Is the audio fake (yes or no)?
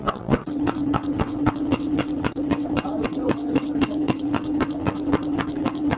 yes